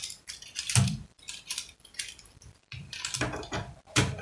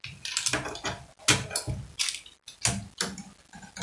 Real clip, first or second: second